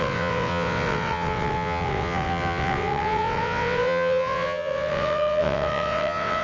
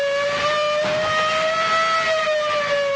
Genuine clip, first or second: second